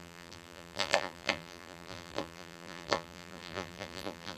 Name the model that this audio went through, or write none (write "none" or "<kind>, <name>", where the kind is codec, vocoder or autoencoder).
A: vocoder, BigVGAN v2